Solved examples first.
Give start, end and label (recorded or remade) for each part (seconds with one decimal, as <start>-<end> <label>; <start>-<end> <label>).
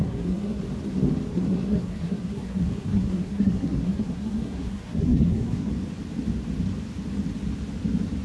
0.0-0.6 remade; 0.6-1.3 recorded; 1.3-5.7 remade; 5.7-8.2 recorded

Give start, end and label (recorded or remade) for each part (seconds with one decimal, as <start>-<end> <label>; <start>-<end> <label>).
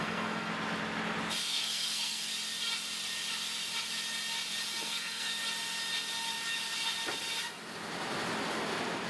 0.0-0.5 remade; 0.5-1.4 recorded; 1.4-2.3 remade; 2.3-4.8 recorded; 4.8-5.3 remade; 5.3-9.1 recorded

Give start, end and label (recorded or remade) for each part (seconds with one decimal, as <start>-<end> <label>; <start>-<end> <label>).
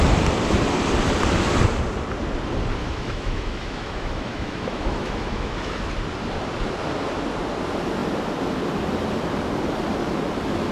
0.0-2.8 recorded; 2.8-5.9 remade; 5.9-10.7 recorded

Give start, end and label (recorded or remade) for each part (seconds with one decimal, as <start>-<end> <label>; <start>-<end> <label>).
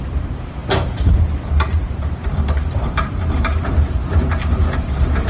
0.0-5.3 remade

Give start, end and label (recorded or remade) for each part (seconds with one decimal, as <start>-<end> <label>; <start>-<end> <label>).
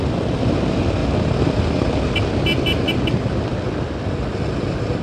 0.0-5.0 recorded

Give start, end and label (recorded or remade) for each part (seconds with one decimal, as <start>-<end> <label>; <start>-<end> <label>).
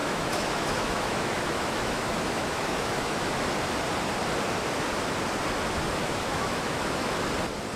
0.0-3.3 remade; 3.3-6.0 recorded; 6.0-7.1 remade; 7.1-7.8 recorded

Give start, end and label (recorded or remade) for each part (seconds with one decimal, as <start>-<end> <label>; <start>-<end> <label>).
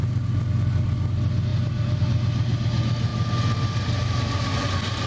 0.0-5.1 recorded